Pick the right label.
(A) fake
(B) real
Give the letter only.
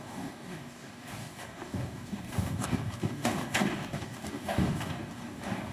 A